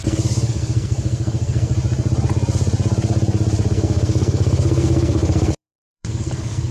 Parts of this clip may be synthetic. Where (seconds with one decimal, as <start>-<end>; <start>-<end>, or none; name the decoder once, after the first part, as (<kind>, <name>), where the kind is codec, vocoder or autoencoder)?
0.0-1.7 (codec, SNAC); 3.7-6.7